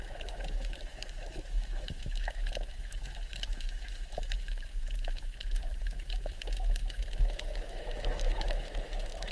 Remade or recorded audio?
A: remade